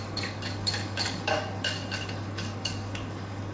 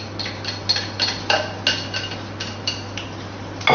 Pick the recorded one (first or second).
second